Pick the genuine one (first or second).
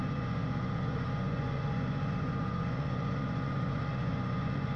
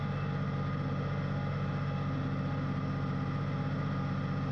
second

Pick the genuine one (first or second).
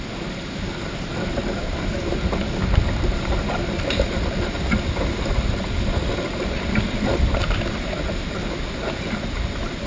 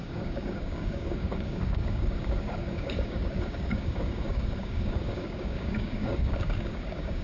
first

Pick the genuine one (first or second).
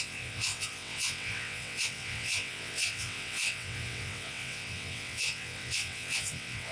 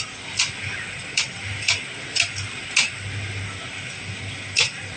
second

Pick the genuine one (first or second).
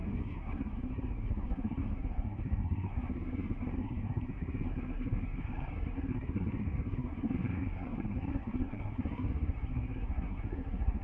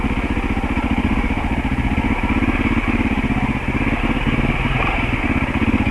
second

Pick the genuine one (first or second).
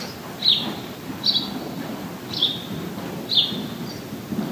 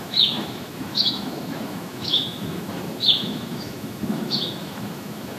first